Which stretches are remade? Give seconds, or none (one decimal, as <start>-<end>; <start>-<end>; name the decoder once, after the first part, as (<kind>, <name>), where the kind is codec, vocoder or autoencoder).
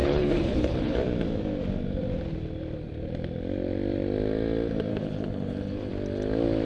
0.0-1.0 (codec, HILCodec); 4.9-5.9